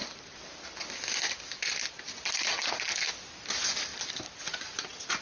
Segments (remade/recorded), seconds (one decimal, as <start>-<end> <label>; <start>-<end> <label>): 0.0-5.2 recorded